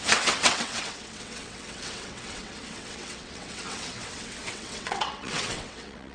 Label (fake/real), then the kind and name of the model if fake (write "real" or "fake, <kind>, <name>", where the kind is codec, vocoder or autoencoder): fake, vocoder, WaveNeXt